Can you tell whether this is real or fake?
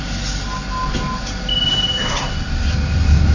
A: real